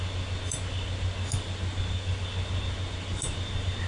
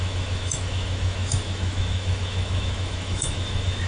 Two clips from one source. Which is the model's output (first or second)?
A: second